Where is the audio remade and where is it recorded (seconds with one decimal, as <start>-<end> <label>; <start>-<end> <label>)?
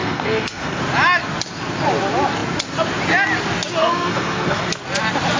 0.0-0.8 remade; 0.8-3.8 recorded; 3.8-4.7 remade; 4.7-5.4 recorded